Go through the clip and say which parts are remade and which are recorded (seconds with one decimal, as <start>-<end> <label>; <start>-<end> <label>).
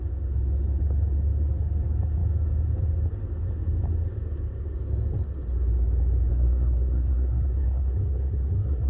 0.0-6.3 recorded; 6.3-8.9 remade